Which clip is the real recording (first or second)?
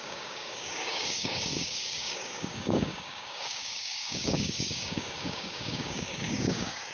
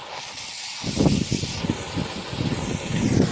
second